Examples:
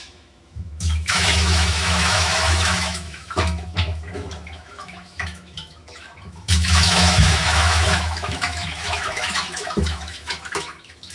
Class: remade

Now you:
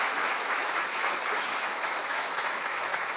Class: remade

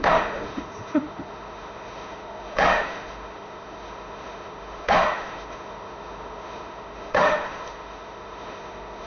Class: remade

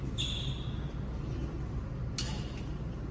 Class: recorded